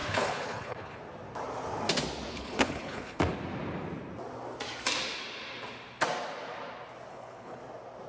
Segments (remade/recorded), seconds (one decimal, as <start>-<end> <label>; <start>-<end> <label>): 0.0-1.0 remade; 1.0-2.3 recorded; 2.3-3.2 remade; 3.2-7.1 recorded; 7.1-7.6 remade; 7.6-8.1 recorded